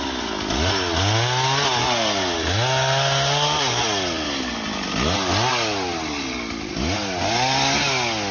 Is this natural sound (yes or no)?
yes